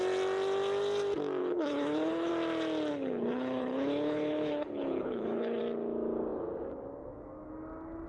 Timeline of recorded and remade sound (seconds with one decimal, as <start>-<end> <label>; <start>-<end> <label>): 0.0-1.4 recorded; 1.4-2.3 remade; 2.3-2.9 recorded; 2.9-5.6 remade; 5.6-8.1 recorded